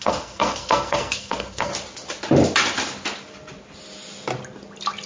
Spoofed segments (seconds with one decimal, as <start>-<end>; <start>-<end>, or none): 0.0-1.7